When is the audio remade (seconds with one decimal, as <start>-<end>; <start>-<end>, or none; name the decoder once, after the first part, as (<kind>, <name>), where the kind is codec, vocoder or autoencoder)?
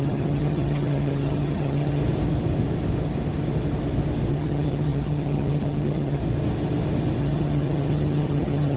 0.0-2.0 (vocoder, HiFi-GAN); 4.3-6.2; 7.2-8.8